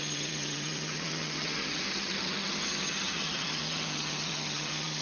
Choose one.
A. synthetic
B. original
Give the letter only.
A